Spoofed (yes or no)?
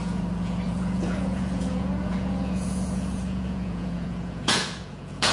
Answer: yes